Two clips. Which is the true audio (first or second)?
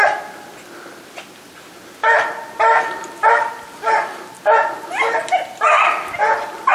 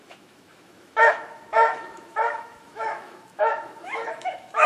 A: first